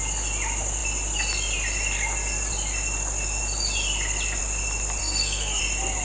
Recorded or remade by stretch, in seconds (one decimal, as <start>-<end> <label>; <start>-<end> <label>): 0.0-5.0 recorded; 5.0-5.6 remade; 5.6-6.0 recorded